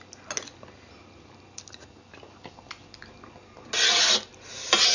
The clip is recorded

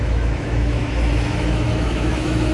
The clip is remade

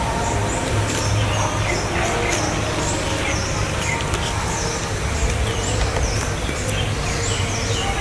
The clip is recorded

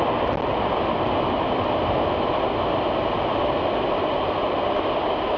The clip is recorded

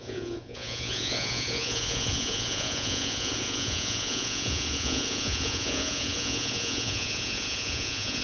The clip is remade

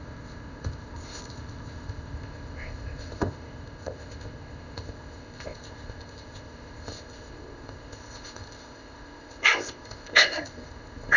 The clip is remade